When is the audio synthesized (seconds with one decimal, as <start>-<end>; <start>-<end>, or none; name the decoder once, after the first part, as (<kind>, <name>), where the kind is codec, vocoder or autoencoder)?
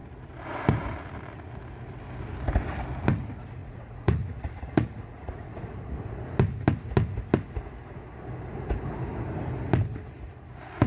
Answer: 3.6-6.2 (vocoder, Vocos)